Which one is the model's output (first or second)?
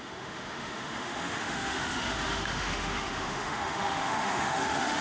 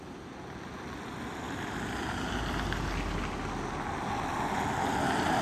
first